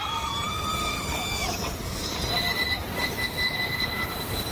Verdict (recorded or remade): remade